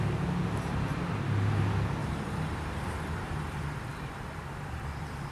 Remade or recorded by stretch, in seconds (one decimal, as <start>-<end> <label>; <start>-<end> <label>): 0.0-2.0 recorded; 2.0-5.3 remade